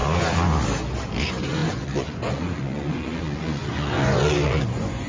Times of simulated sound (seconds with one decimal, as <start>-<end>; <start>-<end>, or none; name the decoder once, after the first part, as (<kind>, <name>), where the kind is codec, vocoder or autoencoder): 1.2-5.1 (vocoder, Vocos)